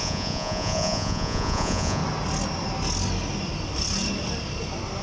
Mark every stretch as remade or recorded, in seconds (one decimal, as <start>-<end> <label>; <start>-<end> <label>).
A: 0.0-2.0 remade; 2.0-5.0 recorded